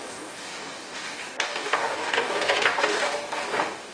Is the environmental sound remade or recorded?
remade